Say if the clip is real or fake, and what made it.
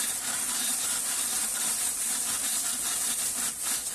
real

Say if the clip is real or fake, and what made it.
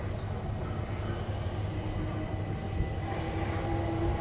real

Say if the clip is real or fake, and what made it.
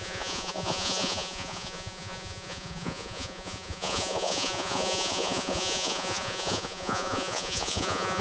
fake, vocoder, Vocos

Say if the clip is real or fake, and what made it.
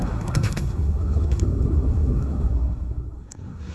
fake, codec, SNAC